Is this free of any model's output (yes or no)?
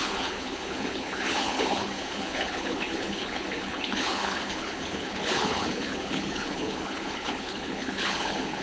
no